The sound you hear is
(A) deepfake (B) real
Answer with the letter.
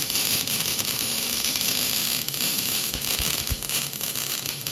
A